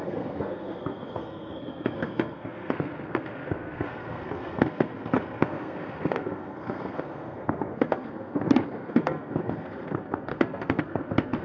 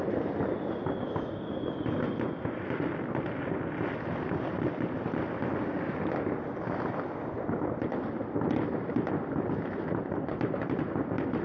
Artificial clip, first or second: first